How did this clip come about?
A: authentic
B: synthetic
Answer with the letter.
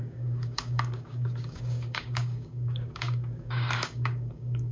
B